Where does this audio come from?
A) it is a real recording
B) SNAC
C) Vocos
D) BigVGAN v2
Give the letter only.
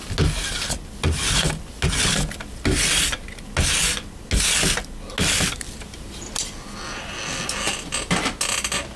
A